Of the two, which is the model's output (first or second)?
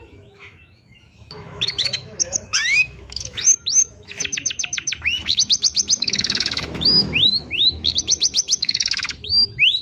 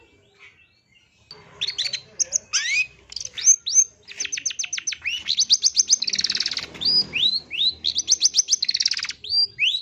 first